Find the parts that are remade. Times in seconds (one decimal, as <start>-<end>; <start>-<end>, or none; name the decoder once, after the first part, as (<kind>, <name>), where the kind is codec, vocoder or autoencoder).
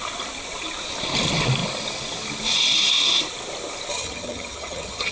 3.9-5.1 (vocoder, HiFi-GAN)